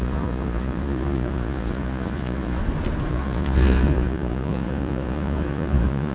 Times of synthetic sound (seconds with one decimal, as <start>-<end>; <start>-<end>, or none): 0.0-2.6; 3.1-6.1

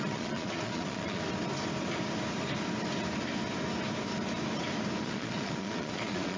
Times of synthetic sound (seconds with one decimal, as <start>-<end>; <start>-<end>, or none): 0.0-1.2; 5.0-6.4

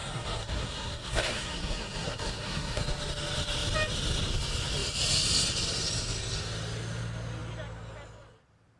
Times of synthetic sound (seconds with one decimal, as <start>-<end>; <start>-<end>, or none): 0.0-2.8

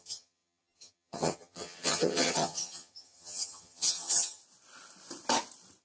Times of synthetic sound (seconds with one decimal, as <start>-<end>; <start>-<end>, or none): 0.0-4.4